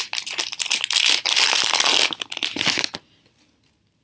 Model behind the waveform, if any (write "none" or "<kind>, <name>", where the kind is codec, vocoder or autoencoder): none